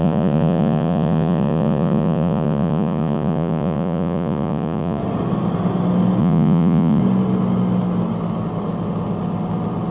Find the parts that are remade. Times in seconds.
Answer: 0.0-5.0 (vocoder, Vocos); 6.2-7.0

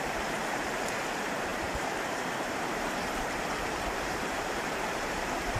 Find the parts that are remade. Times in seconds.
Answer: 0.0-5.6 (vocoder, BigVGAN v2)

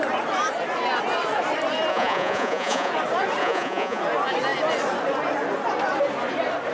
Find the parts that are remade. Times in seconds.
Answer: 1.9-2.9 (vocoder, Vocos); 3.4-4.0

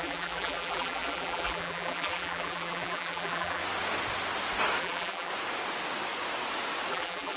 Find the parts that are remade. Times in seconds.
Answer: 0.0-3.6 (vocoder, BigVGAN v2); 4.8-5.3; 6.9-7.4